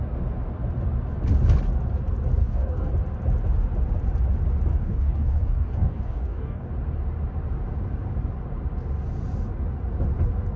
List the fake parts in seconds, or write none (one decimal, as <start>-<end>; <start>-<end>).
2.4-2.9; 4.7-6.7